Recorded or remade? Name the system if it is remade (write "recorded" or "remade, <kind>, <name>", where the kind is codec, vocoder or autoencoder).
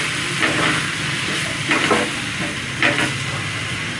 recorded